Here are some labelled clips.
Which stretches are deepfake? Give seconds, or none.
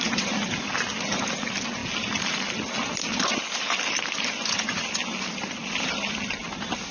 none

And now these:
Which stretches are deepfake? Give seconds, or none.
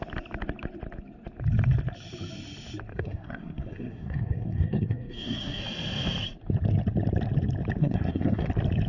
2.9-5.6; 7.8-8.5